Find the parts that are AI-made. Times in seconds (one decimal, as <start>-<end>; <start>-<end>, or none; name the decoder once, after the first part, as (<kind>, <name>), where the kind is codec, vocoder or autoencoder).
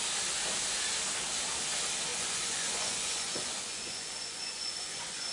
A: 2.1-5.3 (vocoder, Vocos)